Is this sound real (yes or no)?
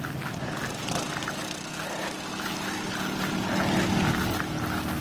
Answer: yes